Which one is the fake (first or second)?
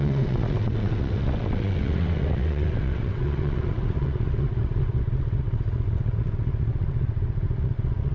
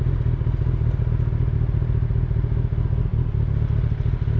first